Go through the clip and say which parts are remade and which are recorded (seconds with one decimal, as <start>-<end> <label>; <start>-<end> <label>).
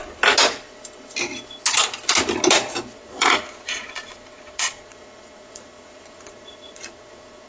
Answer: 0.0-3.0 recorded; 3.0-7.5 remade